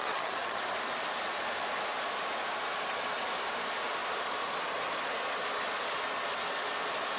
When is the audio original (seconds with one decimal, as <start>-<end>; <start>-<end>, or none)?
0.6-7.2

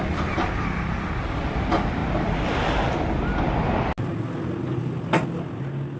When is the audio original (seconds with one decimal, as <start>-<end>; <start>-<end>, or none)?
0.0-6.0

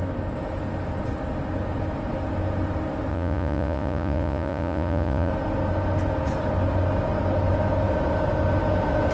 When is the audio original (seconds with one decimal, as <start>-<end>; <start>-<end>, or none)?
0.0-3.1; 5.3-9.1

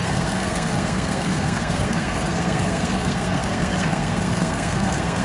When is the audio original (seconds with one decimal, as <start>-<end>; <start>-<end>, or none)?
none

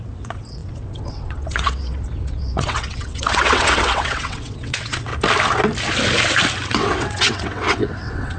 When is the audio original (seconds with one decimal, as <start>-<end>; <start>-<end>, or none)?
5.1-6.7

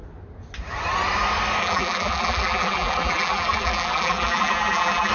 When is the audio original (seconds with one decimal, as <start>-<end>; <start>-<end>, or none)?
0.0-1.6

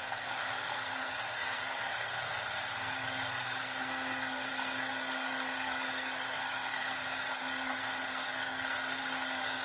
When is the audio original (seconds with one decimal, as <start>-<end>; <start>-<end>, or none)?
none

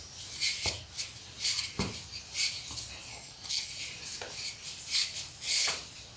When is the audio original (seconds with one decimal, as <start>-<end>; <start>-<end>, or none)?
0.0-3.1; 3.7-6.2